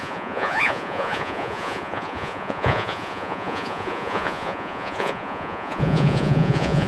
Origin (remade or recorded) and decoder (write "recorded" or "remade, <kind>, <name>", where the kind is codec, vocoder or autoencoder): remade, vocoder, Vocos